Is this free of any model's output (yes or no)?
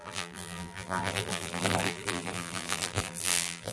no